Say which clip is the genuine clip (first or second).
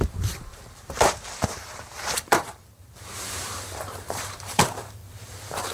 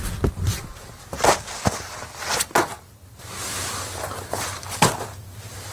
second